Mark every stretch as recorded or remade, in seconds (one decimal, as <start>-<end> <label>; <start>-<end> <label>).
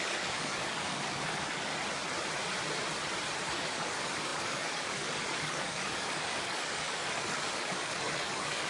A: 0.0-1.7 remade; 1.7-3.5 recorded; 3.5-8.7 remade